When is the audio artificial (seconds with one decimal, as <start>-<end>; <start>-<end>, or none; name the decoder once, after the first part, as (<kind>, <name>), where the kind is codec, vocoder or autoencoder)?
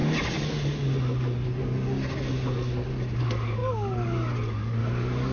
3.2-5.3 (codec, DAC)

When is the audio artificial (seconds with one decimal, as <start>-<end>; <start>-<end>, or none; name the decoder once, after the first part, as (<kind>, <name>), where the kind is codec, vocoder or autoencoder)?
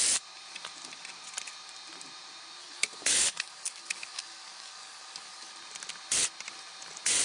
2.6-5.5 (codec, DAC)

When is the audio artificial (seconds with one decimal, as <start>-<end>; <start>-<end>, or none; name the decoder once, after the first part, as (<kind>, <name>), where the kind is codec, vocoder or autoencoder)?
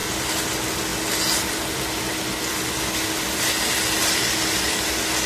none